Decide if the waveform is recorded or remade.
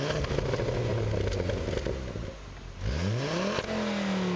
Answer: recorded